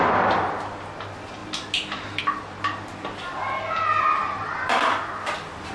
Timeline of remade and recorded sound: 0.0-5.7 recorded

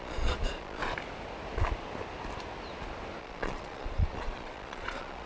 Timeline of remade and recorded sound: 0.0-0.8 remade; 0.8-3.2 recorded; 3.2-5.3 remade

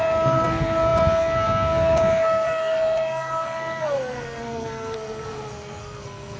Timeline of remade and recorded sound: 0.0-6.4 remade

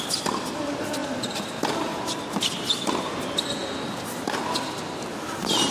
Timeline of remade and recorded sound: 0.0-5.7 recorded

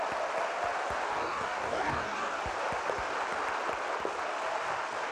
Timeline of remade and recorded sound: 0.0-1.1 recorded; 1.1-2.4 remade; 2.4-5.1 recorded

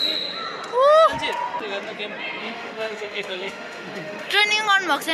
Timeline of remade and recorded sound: 0.0-2.4 recorded; 2.4-4.4 remade; 4.4-5.1 recorded

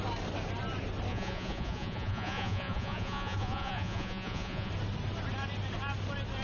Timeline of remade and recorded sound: 0.0-1.1 recorded; 1.1-4.7 remade; 4.7-6.4 recorded